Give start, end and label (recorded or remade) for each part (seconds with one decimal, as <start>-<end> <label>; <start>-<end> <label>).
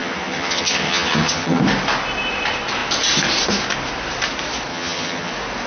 0.0-1.6 remade; 1.6-4.7 recorded; 4.7-5.3 remade; 5.3-5.7 recorded